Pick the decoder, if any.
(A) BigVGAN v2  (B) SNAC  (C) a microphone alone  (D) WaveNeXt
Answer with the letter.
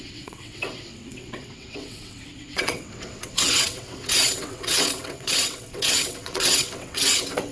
D